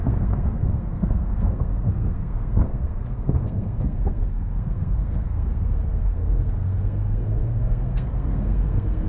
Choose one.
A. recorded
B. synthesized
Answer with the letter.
B